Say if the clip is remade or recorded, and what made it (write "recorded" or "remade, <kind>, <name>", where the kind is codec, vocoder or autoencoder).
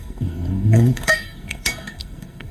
remade, codec, SNAC